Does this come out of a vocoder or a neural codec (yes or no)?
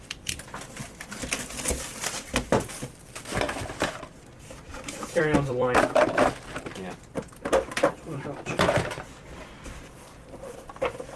yes